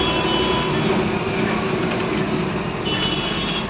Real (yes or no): yes